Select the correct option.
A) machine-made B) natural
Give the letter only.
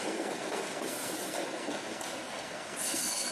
A